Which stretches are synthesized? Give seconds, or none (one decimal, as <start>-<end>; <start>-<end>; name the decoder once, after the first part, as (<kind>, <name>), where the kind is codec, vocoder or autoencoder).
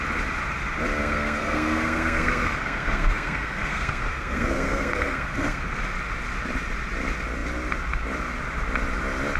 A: 1.0-5.8 (codec, SNAC)